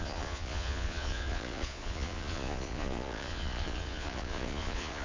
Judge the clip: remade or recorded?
remade